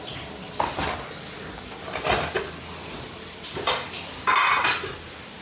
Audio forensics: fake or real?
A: real